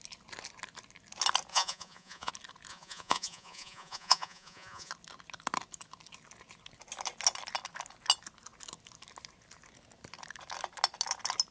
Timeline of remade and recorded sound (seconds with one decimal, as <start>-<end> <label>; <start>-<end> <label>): 0.0-1.5 recorded; 1.5-2.3 remade; 2.3-2.7 recorded; 2.7-4.9 remade; 4.9-11.5 recorded